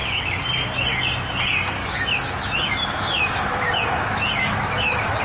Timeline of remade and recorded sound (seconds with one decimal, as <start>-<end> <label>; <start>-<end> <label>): 0.0-1.8 recorded; 1.8-5.2 remade